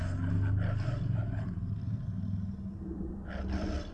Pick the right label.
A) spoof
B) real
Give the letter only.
B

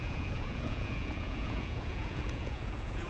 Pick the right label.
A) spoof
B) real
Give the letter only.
A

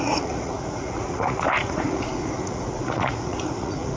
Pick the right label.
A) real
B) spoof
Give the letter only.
B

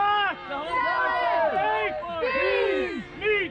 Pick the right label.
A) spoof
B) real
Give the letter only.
B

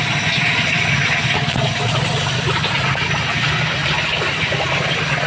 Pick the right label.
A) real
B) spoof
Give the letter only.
A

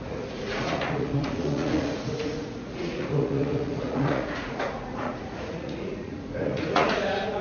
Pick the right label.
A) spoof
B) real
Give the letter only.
A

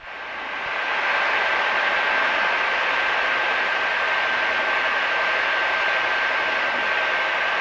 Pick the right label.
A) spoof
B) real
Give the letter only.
B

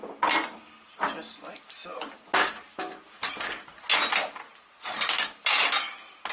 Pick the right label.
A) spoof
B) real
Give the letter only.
B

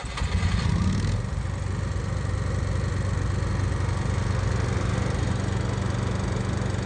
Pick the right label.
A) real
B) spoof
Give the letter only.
A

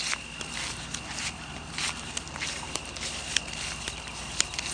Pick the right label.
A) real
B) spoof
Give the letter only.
A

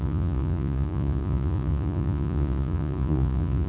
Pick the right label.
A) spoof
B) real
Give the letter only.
A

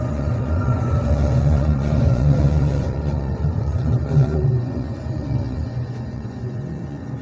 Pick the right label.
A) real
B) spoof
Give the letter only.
B